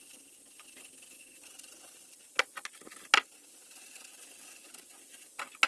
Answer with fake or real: real